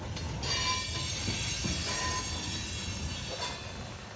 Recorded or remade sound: recorded